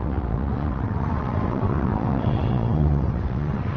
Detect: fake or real fake